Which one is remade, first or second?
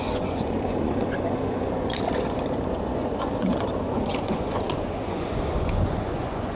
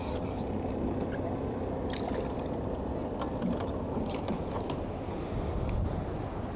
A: first